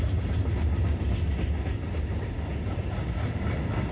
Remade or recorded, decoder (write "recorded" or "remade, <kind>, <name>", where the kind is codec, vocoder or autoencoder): recorded